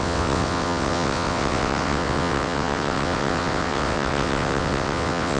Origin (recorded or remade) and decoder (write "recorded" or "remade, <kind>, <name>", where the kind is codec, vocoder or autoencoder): remade, vocoder, WaveNeXt